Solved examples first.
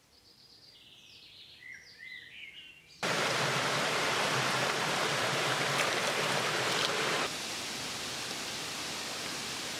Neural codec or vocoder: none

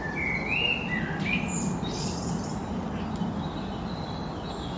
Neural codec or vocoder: none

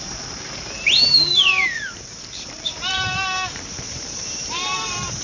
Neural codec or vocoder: vocoder, BigVGAN v2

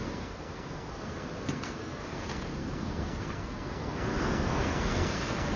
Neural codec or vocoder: codec, SNAC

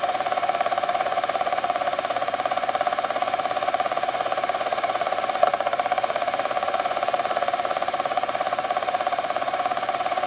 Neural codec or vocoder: vocoder, Vocos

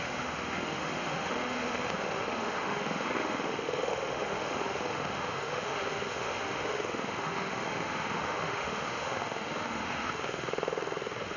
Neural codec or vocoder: autoencoder, DAC-VAE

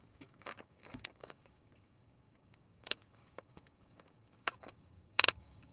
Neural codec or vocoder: codec, DAC